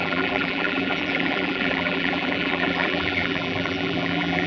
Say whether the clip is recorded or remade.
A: remade